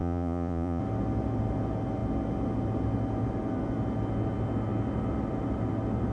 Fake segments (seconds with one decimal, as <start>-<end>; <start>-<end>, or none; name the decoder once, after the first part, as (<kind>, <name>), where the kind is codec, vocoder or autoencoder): 0.0-0.8 (vocoder, Vocos)